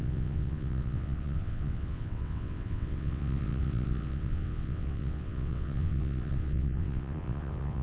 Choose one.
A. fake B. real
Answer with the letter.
A